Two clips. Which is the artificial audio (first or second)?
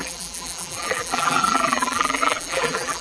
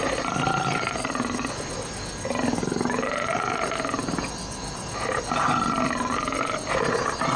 first